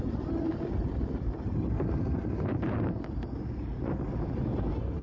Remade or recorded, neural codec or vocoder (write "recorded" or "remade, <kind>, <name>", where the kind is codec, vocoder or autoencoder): recorded